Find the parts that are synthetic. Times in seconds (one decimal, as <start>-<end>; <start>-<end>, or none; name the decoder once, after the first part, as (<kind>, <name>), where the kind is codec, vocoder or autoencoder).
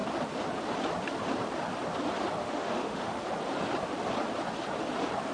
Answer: 2.4-3.2 (autoencoder, DAC-VAE)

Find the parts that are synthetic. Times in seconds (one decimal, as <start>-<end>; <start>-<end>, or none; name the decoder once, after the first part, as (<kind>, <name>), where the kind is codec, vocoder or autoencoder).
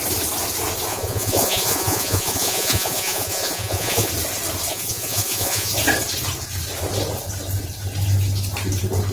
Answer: 0.9-4.1 (vocoder, Vocos); 4.7-5.7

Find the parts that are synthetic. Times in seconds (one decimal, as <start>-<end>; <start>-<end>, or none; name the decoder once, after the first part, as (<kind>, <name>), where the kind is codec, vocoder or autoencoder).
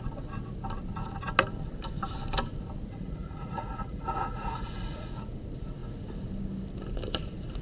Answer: 2.9-5.1 (vocoder, Vocos)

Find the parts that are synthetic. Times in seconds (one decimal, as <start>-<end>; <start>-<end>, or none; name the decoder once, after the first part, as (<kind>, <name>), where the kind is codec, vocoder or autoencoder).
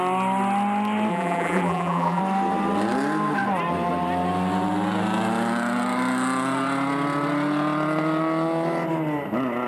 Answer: 1.1-2.2 (vocoder, BigVGAN v2)